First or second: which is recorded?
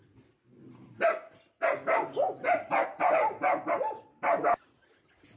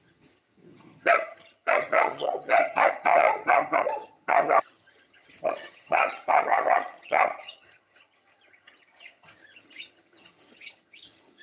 first